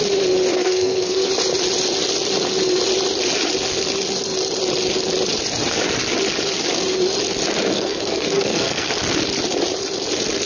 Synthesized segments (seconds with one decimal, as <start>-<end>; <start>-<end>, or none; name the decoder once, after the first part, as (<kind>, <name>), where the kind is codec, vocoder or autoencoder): 0.6-1.3 (codec, SNAC); 7.7-8.9